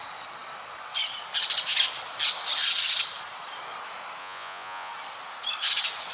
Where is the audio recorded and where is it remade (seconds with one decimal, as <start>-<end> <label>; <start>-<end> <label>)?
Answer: 0.0-4.2 recorded; 4.2-4.9 remade; 4.9-6.1 recorded